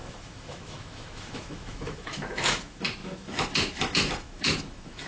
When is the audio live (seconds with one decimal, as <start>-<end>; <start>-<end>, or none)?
none